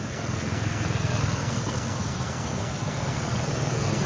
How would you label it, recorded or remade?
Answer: remade